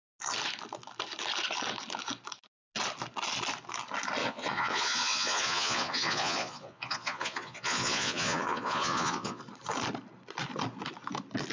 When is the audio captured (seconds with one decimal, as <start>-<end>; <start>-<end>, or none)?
0.0-4.2; 9.4-11.5